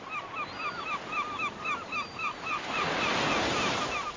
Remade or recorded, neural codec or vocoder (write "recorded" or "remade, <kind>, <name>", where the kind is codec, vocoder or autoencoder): recorded